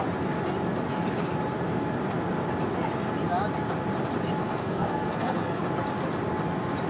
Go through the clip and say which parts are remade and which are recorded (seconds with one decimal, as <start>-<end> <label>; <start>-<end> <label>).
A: 0.0-4.4 recorded; 4.4-5.6 remade; 5.6-6.9 recorded